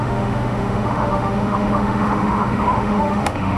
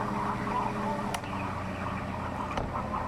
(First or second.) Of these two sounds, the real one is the second